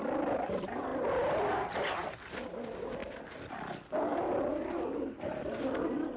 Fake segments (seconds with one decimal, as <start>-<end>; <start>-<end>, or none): none